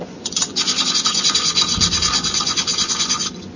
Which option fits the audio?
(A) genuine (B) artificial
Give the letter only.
B